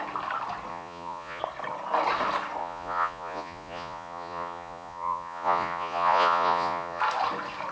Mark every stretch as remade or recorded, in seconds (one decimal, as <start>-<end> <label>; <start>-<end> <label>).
0.0-0.7 recorded; 0.7-1.4 remade; 1.4-2.6 recorded; 2.6-7.0 remade; 7.0-7.7 recorded